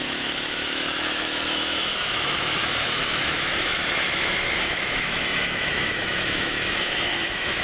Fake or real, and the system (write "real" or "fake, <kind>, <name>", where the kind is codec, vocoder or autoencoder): fake, autoencoder, DAC-VAE